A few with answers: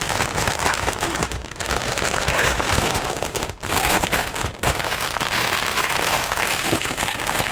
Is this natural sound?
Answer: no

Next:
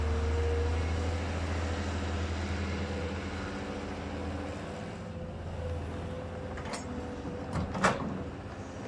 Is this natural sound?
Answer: yes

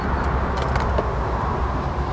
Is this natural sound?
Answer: yes